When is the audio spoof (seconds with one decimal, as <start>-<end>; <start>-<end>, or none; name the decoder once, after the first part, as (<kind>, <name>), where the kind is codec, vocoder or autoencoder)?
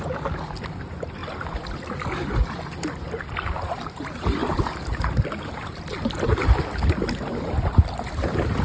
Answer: none